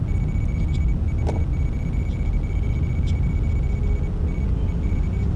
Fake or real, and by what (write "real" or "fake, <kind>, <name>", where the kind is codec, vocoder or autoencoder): real